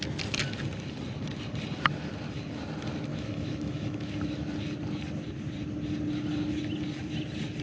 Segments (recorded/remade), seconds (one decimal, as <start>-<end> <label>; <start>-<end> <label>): 0.0-3.1 recorded; 3.1-4.1 remade; 4.1-7.6 recorded